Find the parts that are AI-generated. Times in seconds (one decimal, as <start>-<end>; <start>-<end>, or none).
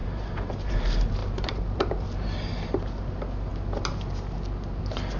0.0-0.7; 1.2-3.0